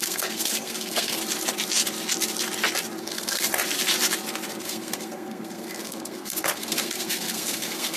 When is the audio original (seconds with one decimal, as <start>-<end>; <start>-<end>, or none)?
1.2-3.0; 3.5-4.6